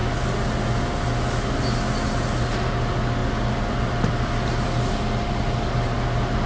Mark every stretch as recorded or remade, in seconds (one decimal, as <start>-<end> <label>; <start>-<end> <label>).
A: 0.0-6.5 recorded